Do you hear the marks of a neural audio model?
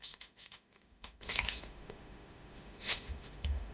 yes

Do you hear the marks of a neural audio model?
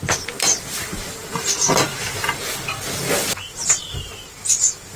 no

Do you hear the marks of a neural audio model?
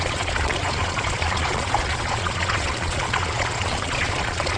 yes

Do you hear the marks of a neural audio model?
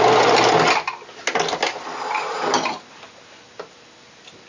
no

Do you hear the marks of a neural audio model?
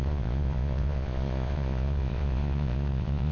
yes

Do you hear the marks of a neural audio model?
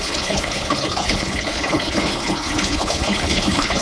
yes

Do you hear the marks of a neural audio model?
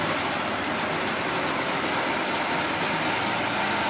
no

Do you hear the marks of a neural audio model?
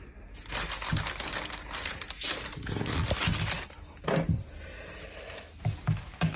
no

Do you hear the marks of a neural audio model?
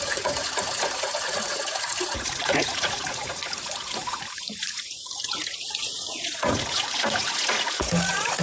yes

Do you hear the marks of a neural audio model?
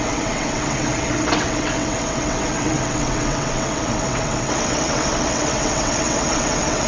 yes